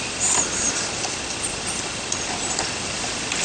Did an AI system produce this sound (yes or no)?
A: no